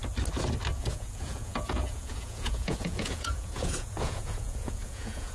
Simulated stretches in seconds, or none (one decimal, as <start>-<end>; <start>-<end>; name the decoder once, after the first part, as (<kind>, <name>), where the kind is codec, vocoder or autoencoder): 0.8-5.3 (vocoder, Vocos)